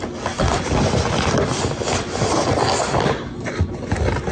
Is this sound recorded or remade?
recorded